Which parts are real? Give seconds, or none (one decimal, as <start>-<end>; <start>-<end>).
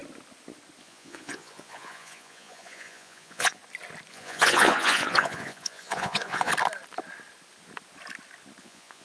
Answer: 0.0-0.8; 3.6-4.1; 6.5-8.6